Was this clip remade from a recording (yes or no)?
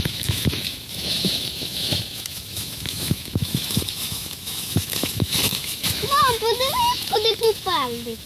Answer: yes